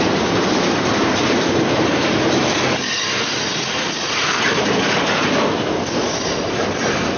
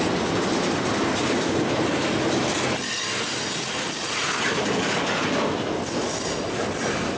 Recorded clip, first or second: second